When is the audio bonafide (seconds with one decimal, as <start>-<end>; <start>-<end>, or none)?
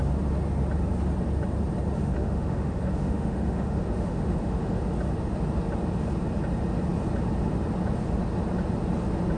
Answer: 0.0-2.0; 4.8-9.4